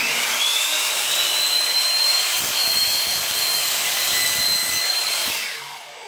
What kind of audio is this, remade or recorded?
remade